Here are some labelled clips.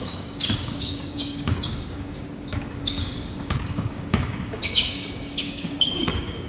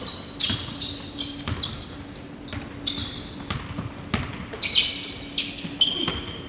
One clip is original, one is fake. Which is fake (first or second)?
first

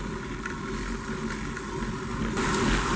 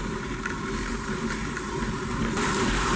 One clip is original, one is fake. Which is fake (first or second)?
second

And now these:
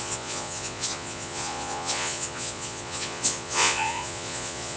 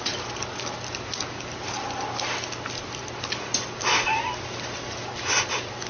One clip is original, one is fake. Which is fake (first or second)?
first